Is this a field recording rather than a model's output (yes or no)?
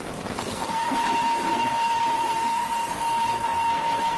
no